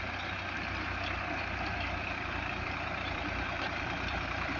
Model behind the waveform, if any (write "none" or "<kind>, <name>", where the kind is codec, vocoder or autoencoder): vocoder, BigVGAN v2